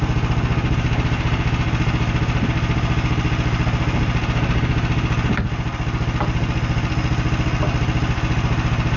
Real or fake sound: real